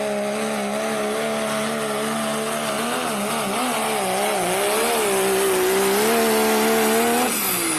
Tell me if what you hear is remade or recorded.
recorded